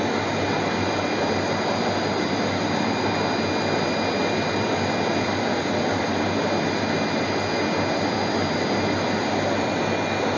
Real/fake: real